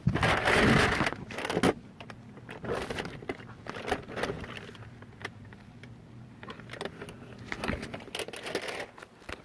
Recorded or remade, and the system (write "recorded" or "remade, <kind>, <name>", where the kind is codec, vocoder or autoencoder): recorded